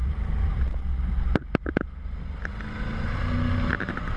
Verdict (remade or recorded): recorded